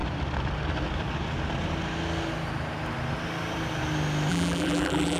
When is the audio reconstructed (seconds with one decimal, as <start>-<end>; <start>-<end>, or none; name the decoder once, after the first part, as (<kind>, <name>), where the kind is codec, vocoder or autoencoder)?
4.3-5.2 (vocoder, BigVGAN v2)